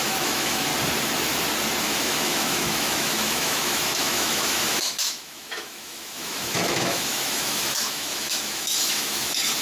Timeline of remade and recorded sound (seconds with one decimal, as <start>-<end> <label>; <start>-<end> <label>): 0.0-0.7 remade; 0.7-1.8 recorded; 1.8-9.6 remade